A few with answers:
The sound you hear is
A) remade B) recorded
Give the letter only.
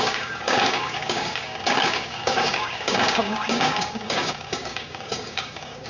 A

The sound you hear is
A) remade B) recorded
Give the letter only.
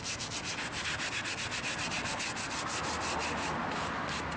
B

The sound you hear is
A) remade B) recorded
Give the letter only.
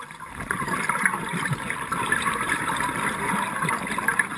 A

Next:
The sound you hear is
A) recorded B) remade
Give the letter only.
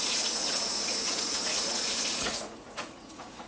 B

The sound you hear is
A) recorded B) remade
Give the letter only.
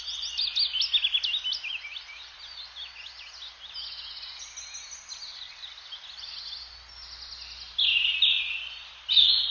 A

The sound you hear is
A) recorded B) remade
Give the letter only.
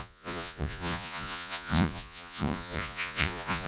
B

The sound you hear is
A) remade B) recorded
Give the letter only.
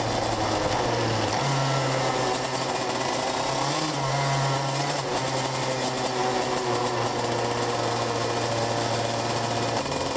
B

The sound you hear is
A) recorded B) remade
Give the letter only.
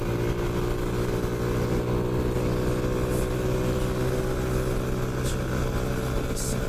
A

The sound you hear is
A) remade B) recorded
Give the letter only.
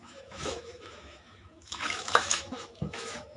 A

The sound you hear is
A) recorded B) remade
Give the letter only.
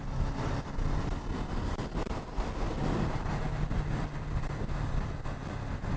A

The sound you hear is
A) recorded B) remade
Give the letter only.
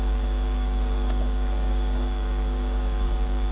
B